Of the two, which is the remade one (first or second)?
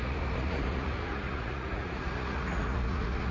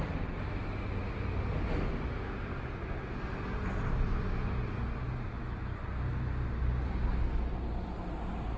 first